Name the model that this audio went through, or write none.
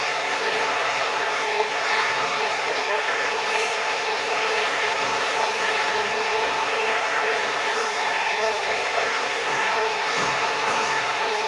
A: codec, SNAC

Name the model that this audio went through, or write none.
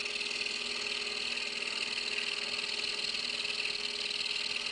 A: none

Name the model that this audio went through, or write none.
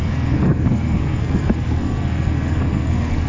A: codec, SNAC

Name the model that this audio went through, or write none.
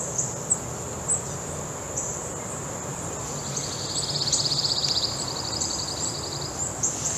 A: none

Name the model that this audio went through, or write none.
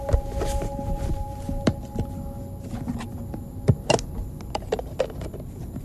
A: none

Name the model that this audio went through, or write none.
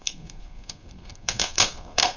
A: codec, SNAC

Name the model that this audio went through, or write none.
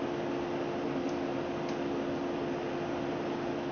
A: none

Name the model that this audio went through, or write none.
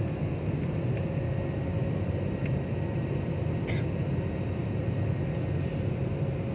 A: none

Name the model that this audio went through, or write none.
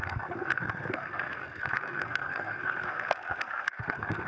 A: codec, SNAC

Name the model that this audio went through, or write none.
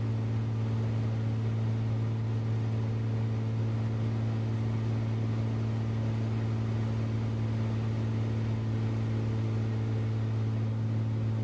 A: none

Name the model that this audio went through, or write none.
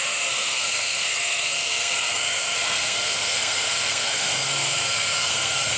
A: codec, SNAC